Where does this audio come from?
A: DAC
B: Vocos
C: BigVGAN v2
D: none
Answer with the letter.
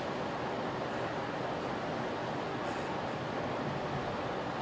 D